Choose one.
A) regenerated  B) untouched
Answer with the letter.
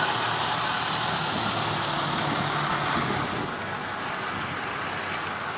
B